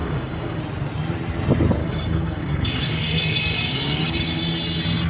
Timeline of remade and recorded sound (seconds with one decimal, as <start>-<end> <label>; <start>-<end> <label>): 0.0-0.6 remade; 0.6-1.8 recorded; 1.8-4.4 remade; 4.4-5.1 recorded